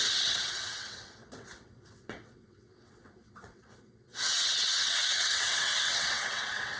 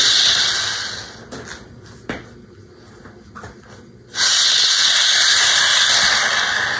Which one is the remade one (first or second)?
first